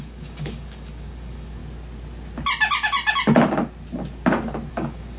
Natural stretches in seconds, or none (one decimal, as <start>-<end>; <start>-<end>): 1.6-4.7

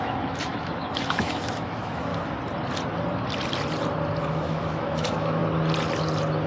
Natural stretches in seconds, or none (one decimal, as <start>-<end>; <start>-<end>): 2.1-4.2; 5.4-6.5

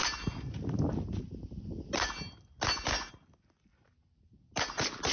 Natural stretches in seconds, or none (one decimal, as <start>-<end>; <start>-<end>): 0.0-5.1

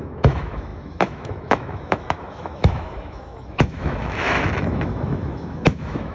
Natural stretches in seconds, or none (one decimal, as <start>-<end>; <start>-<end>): none